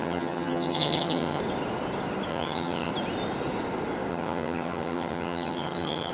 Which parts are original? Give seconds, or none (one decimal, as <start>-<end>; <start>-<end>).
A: 1.4-2.3; 2.9-4.1